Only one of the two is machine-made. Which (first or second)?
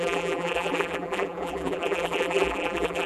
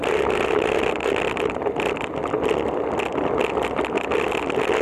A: first